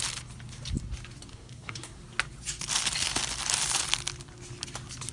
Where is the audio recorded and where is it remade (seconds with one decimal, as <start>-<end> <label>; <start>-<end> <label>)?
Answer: 0.0-1.3 recorded; 1.3-2.0 remade; 2.0-5.1 recorded